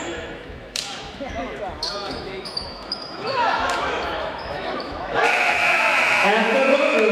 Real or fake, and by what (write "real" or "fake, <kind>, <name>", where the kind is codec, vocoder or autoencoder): fake, autoencoder, DAC-VAE